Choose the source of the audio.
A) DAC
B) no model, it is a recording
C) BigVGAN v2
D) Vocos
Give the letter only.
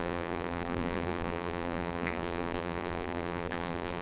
C